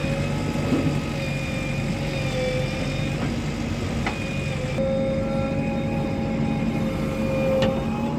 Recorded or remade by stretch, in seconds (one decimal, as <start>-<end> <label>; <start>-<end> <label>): 0.0-8.2 recorded